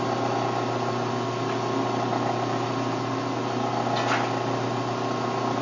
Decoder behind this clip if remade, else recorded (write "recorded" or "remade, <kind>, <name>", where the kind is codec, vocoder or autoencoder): recorded